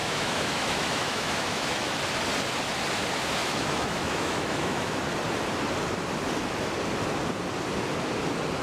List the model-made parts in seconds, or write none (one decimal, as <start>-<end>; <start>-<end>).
0.0-1.9; 3.4-5.0